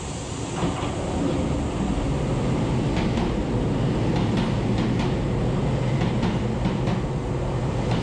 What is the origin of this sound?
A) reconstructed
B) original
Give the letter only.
B